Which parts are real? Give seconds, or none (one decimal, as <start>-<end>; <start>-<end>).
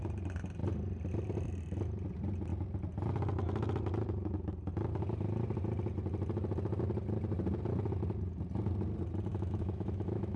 0.0-9.3